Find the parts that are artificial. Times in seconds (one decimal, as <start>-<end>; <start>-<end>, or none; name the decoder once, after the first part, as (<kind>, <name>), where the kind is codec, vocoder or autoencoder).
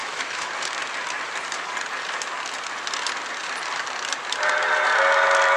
0.0-0.5 (autoencoder, DAC-VAE)